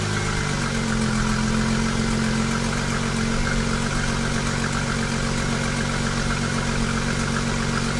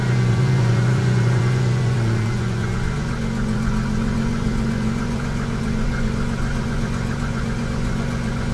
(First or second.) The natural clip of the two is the first